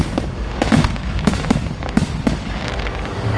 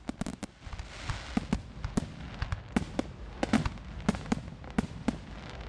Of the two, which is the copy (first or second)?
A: first